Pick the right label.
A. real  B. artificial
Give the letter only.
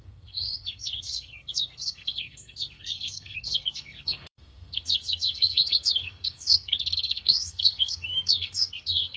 B